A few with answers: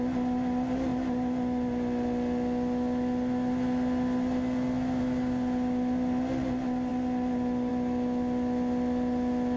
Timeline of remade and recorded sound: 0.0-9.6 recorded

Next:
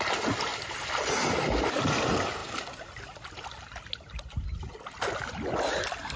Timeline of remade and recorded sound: 0.0-6.2 recorded

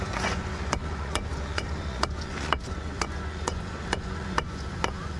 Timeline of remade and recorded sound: 0.0-5.2 remade

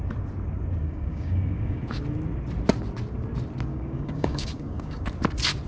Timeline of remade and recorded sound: 0.0-0.8 recorded; 0.8-1.8 remade; 1.8-3.7 recorded; 3.7-5.0 remade; 5.0-5.7 recorded

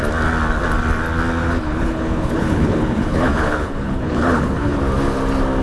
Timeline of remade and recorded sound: 0.0-1.4 recorded; 1.4-4.8 remade; 4.8-5.6 recorded

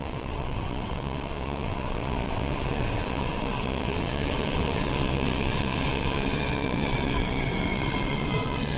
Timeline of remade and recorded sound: 0.0-8.8 remade